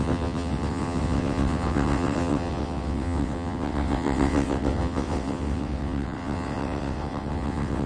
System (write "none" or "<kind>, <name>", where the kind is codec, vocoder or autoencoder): vocoder, WaveNeXt